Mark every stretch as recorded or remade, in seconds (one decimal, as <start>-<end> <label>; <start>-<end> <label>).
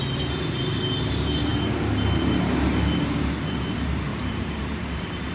0.0-4.1 recorded; 4.1-4.8 remade; 4.8-5.3 recorded